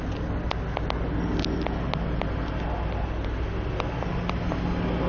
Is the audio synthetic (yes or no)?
no